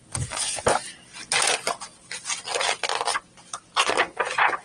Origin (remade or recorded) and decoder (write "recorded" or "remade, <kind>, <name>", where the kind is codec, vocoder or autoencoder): recorded